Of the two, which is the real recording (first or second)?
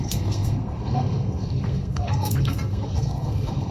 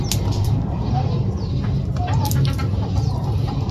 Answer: second